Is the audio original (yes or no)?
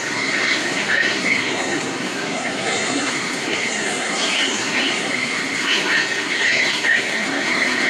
no